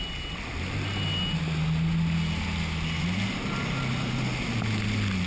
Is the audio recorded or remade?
recorded